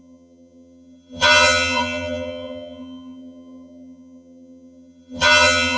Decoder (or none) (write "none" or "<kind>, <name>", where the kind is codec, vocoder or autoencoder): vocoder, HiFi-GAN